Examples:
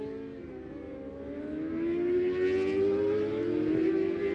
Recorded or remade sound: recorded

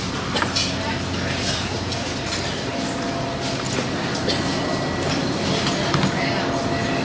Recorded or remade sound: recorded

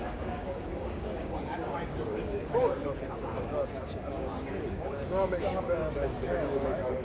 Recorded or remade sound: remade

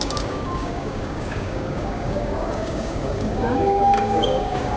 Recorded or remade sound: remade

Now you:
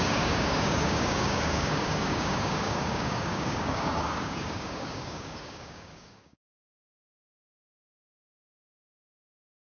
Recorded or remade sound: remade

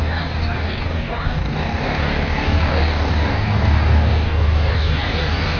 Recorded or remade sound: remade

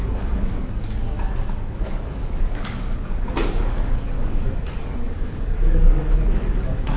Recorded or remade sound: remade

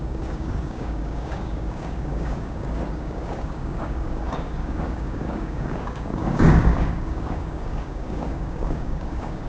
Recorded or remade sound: remade